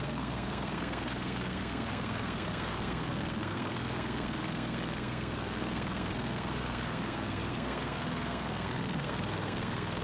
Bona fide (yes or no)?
no